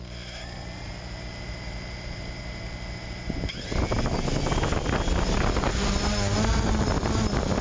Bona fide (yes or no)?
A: yes